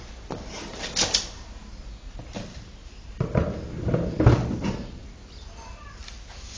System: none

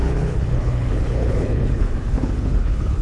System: codec, HILCodec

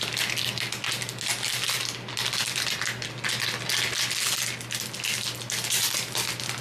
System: none